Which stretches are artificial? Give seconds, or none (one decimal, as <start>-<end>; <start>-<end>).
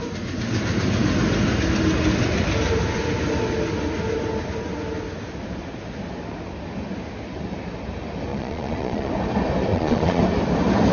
8.3-9.1; 9.7-10.2